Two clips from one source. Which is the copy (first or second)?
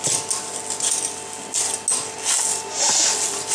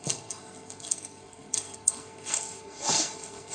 second